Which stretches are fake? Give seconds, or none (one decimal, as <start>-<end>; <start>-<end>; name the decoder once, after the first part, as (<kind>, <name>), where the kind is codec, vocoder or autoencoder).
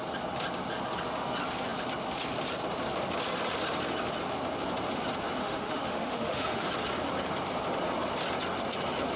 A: 5.4-6.7 (autoencoder, DAC-VAE)